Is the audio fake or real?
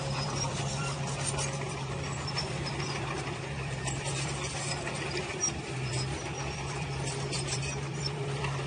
fake